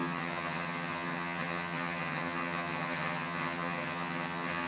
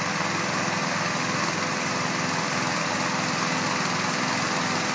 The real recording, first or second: second